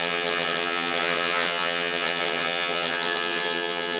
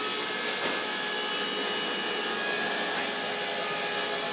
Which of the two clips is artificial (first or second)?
first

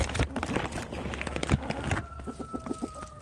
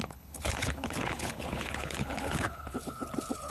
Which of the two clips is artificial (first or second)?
second